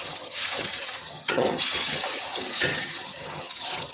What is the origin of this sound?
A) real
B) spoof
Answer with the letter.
B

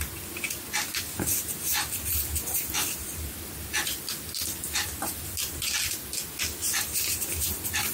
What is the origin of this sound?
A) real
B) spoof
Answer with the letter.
A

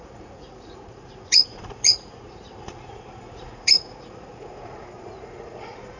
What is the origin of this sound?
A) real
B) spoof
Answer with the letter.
B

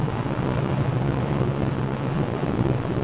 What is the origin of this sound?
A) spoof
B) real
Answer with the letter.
A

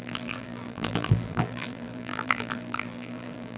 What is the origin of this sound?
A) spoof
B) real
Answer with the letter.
A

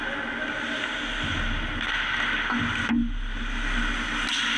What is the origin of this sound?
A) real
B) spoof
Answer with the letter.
A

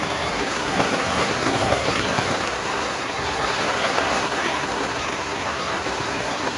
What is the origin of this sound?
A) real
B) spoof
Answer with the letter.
B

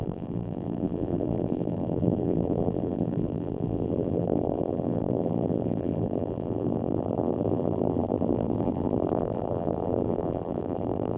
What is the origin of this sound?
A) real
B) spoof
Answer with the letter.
B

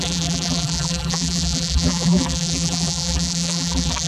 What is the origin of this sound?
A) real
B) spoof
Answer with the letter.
B